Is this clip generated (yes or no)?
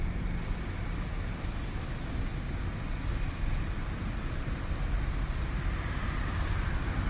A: no